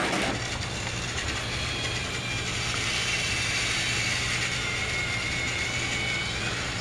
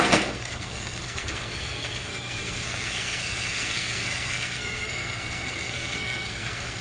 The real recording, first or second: first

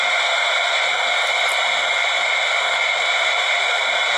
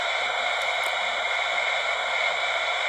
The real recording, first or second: first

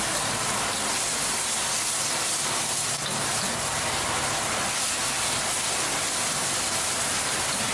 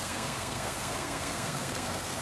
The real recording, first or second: first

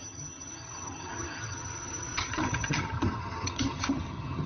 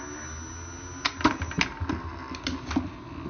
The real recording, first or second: second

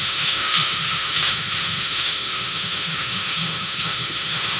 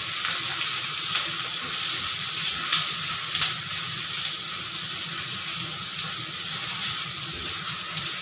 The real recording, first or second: second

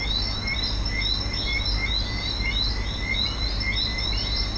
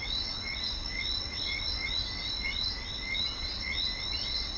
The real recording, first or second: first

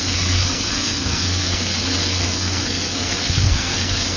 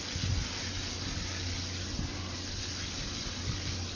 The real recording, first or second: second